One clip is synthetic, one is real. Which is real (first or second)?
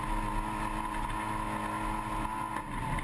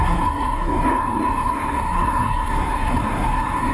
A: first